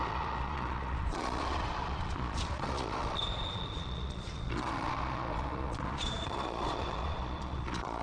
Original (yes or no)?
no